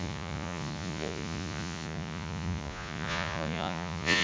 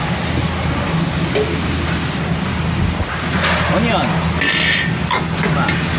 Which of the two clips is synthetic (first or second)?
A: first